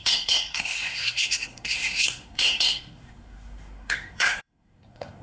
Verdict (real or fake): fake